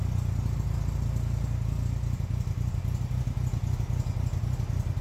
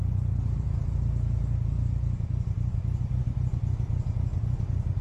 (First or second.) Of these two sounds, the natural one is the first